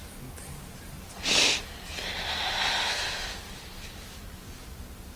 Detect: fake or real real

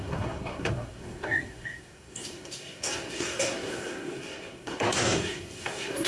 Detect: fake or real fake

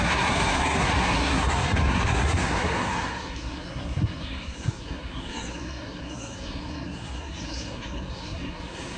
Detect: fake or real fake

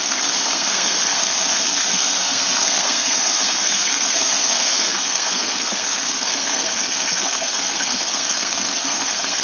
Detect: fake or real fake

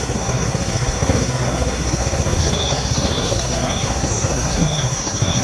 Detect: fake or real fake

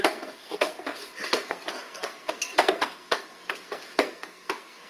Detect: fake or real fake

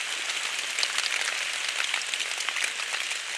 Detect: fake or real real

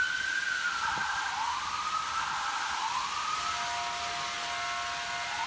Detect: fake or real real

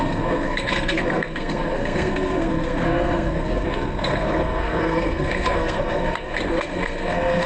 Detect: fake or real fake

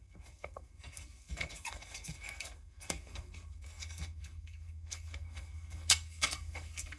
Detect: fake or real fake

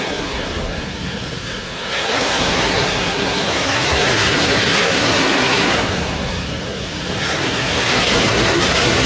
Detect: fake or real fake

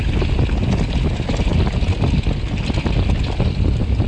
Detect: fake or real real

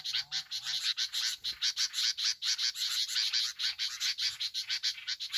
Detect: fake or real real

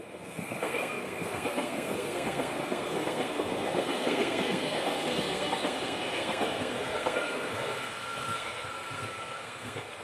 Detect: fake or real fake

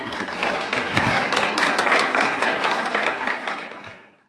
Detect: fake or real fake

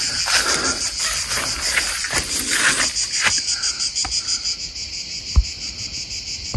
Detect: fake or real real